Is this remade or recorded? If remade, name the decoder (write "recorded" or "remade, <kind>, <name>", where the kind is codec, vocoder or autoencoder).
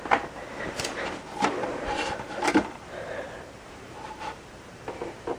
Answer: remade, vocoder, BigVGAN v2